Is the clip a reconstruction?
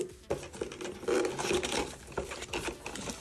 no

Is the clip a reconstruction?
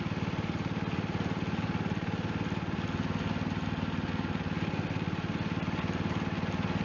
no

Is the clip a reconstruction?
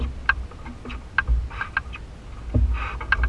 no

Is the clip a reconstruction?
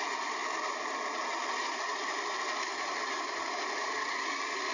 no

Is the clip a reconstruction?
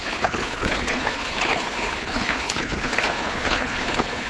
yes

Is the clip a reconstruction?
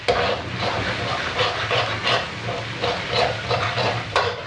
no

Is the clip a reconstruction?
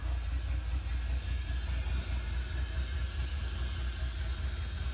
no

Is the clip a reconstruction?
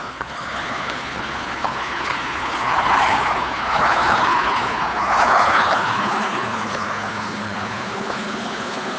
yes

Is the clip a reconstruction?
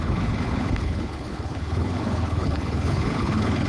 yes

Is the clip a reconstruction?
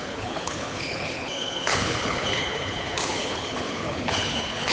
yes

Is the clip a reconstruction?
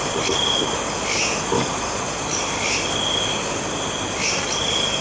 no